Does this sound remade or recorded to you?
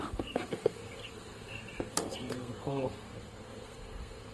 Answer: remade